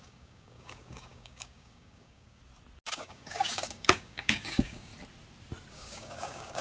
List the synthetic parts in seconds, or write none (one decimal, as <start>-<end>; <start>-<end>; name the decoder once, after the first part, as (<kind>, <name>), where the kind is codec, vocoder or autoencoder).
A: 0.0-2.4 (codec, DAC); 2.9-4.9; 5.7-6.6